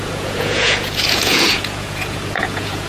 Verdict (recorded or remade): remade